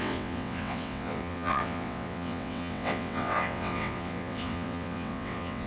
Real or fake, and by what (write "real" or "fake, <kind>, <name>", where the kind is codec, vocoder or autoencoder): fake, vocoder, WaveNeXt